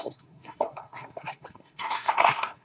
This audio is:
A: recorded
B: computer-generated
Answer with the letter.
B